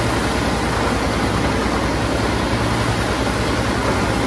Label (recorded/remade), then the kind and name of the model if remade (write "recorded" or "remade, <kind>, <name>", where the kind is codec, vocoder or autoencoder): recorded